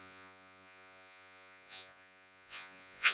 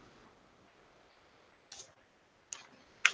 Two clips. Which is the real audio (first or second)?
second